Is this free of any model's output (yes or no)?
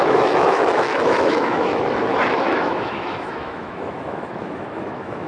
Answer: no